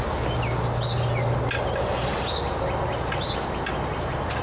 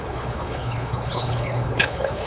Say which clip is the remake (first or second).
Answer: second